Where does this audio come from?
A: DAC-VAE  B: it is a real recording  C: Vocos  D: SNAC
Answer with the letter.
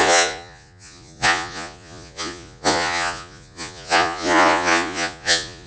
C